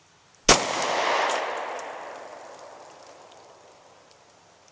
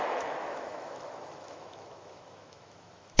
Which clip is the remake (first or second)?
second